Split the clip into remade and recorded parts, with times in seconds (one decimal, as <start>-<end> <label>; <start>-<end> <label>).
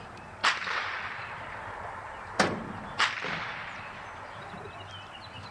0.0-0.4 recorded; 0.4-2.6 remade; 2.6-3.6 recorded; 3.6-4.5 remade; 4.5-5.5 recorded